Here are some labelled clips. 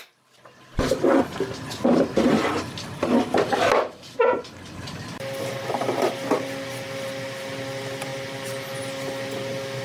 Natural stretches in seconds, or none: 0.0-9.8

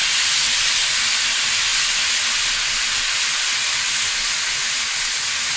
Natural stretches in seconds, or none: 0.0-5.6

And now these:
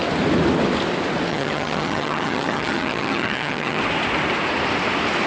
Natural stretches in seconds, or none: 0.0-1.3; 3.8-5.3

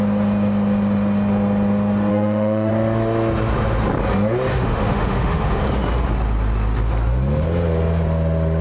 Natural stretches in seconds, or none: 0.0-2.1; 2.7-4.5; 5.6-8.6

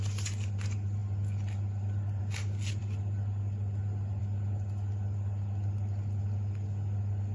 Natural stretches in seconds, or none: 0.0-7.3

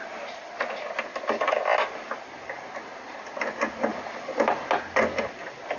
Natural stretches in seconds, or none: 0.0-5.8